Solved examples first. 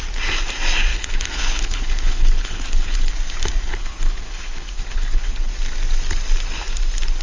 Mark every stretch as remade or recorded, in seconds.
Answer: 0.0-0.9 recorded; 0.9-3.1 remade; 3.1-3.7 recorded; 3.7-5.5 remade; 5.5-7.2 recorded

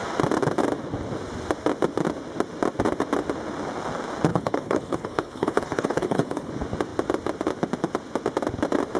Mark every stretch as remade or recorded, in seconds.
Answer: 0.0-4.3 recorded; 4.3-6.5 remade; 6.5-9.0 recorded

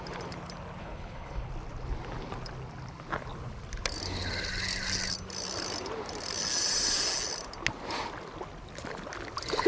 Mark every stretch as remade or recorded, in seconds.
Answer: 0.0-0.8 recorded; 0.8-1.5 remade; 1.5-9.7 recorded

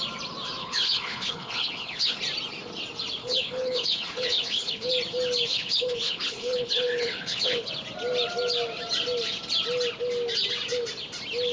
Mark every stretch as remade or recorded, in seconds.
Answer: 0.0-0.6 recorded; 0.6-2.2 remade; 2.2-3.2 recorded; 3.2-4.9 remade; 4.9-5.5 recorded; 5.5-7.7 remade; 7.7-11.5 recorded